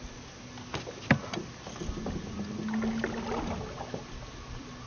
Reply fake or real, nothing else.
real